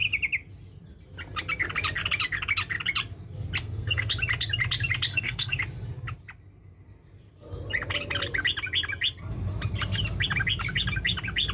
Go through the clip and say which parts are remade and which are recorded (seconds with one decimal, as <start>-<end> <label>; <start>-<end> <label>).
0.0-3.6 recorded; 3.6-4.1 remade; 4.1-5.1 recorded; 5.1-5.6 remade; 5.6-11.5 recorded